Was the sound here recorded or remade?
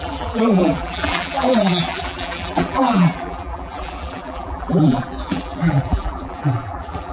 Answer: remade